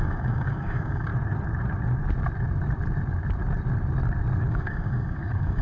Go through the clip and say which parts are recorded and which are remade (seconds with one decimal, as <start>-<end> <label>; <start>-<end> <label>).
0.0-1.1 remade; 1.1-4.5 recorded; 4.5-5.6 remade